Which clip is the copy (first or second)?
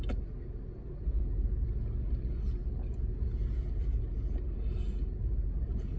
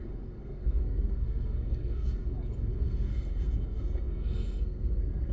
second